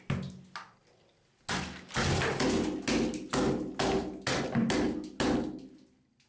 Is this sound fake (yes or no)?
no